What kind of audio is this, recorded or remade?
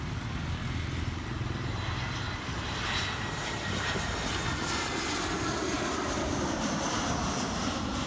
recorded